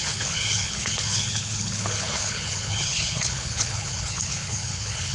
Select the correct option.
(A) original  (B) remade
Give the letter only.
B